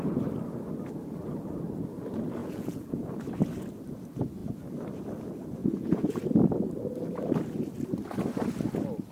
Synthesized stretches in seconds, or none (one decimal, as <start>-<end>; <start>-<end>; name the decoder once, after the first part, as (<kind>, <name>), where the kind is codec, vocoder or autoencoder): 2.4-3.0 (vocoder, Vocos); 5.6-6.2